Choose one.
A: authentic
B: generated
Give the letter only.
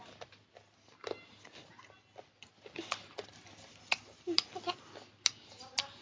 A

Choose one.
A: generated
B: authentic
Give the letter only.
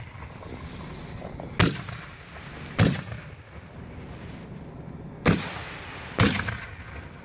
B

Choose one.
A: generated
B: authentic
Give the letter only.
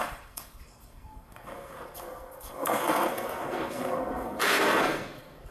A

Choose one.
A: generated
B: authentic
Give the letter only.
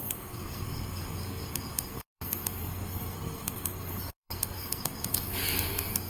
A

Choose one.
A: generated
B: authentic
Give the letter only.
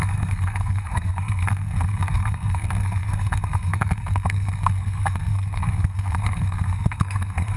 A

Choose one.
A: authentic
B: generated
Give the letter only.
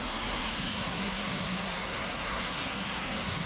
B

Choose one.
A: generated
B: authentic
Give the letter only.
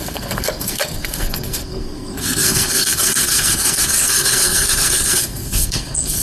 A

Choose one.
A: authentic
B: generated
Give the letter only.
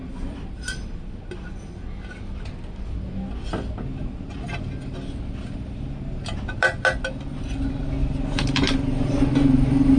A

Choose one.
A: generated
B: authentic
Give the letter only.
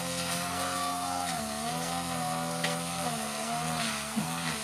A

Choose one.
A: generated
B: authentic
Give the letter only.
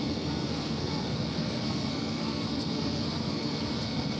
A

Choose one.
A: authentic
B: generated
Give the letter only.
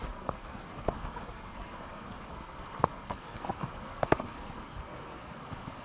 B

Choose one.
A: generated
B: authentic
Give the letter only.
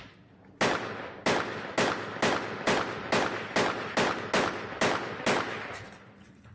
B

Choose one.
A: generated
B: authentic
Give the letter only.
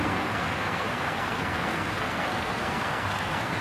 A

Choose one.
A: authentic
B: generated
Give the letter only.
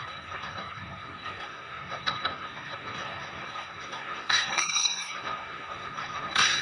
B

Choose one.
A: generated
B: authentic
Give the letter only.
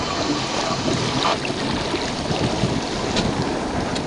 B